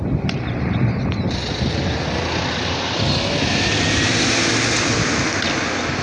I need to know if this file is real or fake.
real